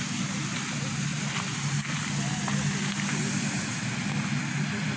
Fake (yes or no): no